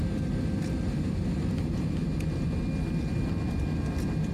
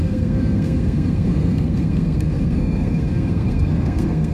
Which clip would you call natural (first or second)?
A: first